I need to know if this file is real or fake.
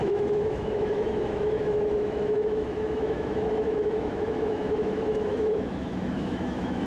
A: fake